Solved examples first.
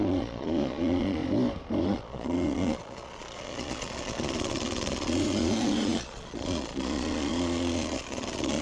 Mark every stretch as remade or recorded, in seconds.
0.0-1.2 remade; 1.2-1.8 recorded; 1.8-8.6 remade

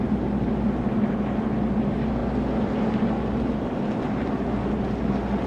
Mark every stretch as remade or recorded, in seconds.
0.0-5.5 recorded